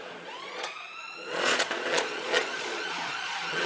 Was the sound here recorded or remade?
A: remade